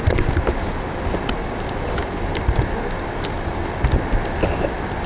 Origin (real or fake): real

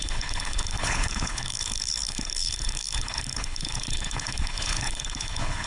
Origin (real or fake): fake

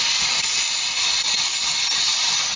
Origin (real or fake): real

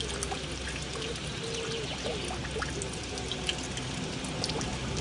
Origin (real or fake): real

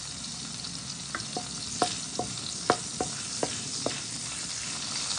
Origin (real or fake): real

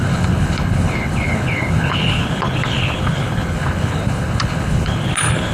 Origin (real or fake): fake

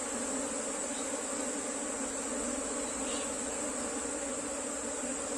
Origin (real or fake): real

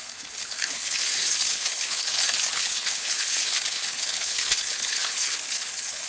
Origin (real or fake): fake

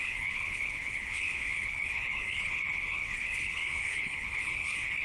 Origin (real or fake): fake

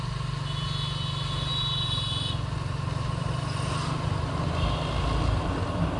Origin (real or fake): real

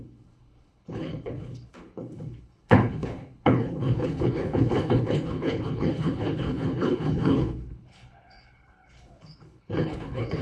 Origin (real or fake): fake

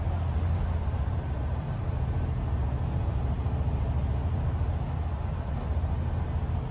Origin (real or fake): real